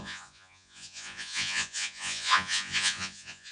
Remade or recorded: remade